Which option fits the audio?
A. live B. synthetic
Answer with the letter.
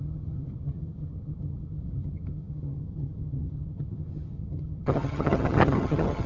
B